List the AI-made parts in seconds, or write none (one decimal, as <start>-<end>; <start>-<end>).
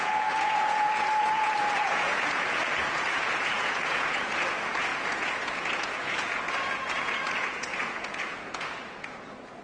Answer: 0.0-9.6